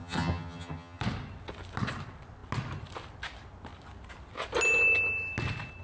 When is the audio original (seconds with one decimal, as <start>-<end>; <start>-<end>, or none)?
1.0-5.8